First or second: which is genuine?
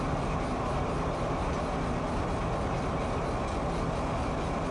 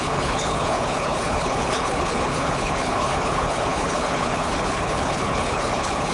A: first